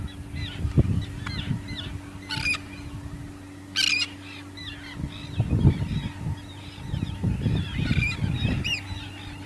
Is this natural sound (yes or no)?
yes